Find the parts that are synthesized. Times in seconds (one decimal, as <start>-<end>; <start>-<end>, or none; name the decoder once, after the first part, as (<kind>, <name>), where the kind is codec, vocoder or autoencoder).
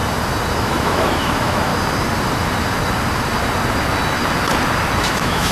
0.6-1.7 (autoencoder, DAC-VAE); 5.0-5.5